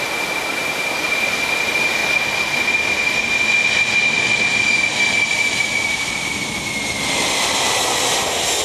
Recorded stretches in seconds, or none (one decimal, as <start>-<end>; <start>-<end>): 0.0-8.6